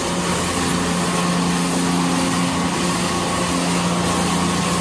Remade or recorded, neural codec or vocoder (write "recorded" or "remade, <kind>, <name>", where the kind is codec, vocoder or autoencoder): recorded